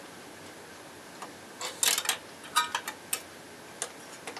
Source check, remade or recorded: recorded